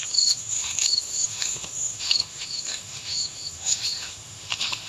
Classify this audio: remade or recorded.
remade